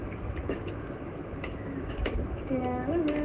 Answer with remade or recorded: remade